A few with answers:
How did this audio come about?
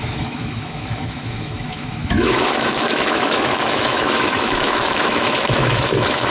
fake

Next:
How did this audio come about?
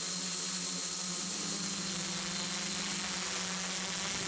real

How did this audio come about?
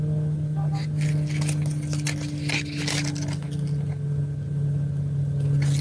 real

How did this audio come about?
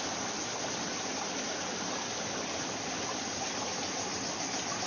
real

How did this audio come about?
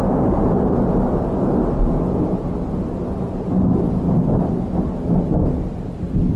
real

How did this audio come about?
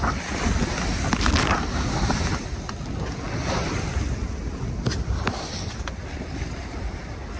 real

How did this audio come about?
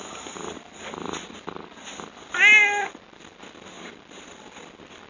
real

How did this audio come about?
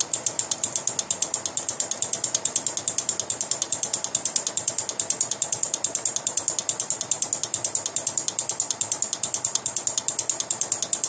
real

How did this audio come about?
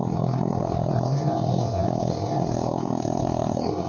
fake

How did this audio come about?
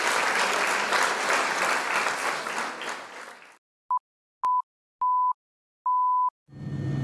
real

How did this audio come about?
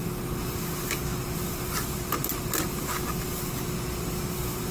real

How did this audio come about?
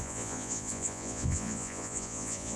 fake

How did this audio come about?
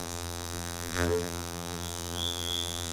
fake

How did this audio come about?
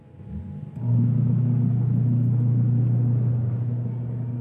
real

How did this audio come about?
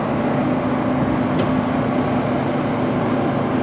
real